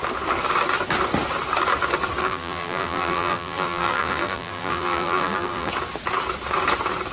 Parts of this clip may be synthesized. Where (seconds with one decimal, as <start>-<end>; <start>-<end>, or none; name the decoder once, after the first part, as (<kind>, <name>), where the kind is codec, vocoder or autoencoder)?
2.2-5.7 (vocoder, BigVGAN v2)